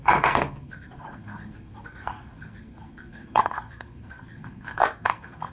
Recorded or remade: remade